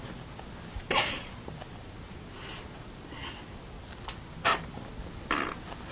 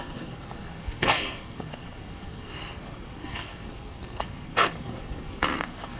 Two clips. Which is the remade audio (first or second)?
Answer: second